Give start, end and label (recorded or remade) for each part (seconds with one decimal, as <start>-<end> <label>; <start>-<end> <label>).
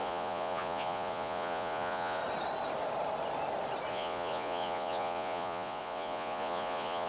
0.0-2.2 remade; 2.2-3.9 recorded; 3.9-7.1 remade